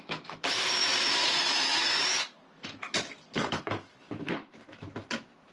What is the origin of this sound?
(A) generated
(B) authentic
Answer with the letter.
A